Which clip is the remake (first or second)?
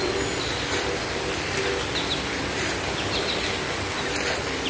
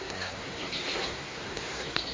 second